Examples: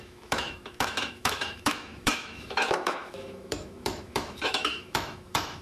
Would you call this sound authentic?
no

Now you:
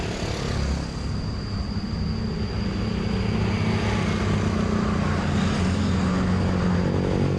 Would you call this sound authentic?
yes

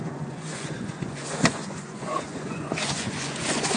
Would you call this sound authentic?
no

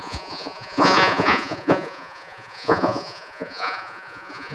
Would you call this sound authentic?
no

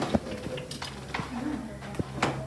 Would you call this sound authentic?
yes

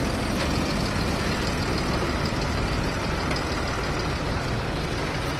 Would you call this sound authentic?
yes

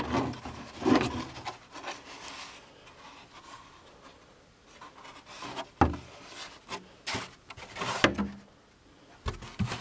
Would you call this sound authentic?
yes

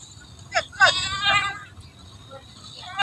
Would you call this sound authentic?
yes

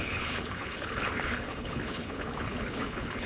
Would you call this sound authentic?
no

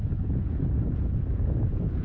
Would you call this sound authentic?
no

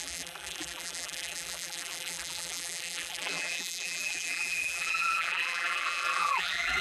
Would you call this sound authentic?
no